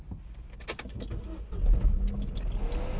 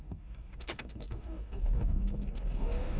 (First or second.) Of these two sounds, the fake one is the second